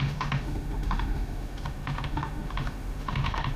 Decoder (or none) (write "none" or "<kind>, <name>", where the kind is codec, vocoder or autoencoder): autoencoder, DAC-VAE